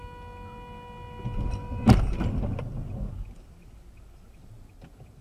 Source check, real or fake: real